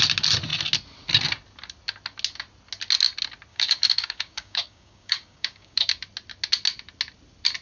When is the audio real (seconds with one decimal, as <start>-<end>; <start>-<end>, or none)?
0.0-3.5; 6.0-7.6

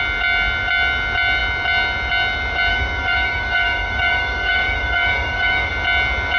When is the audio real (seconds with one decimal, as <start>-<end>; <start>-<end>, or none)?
0.0-2.7; 5.7-6.4

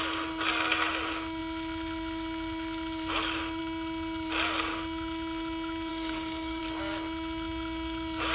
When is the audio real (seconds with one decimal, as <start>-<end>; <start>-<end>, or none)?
0.0-5.9; 6.6-8.3

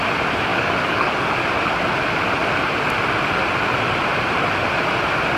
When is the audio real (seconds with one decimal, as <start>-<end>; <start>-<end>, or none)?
0.0-0.5; 1.3-5.4

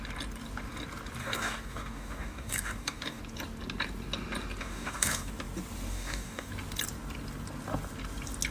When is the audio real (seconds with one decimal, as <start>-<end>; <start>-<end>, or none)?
0.0-1.2; 3.2-4.6; 5.3-5.9; 6.5-8.5